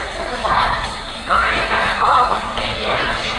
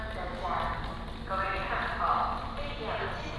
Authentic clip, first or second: second